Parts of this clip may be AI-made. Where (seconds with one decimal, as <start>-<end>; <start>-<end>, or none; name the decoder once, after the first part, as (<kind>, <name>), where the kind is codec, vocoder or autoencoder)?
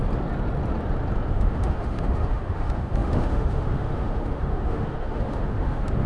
1.3-6.1 (autoencoder, DAC-VAE)